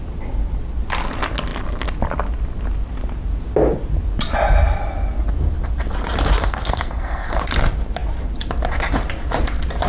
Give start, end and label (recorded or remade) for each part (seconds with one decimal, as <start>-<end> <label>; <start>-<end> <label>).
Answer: 0.0-6.4 recorded; 6.4-7.4 remade; 7.4-9.9 recorded